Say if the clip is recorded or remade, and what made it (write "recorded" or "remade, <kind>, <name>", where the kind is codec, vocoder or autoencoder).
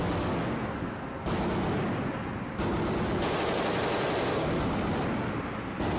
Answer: recorded